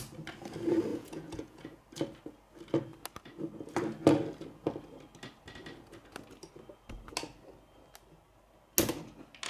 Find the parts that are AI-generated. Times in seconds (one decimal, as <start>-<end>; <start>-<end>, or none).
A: 0.9-1.8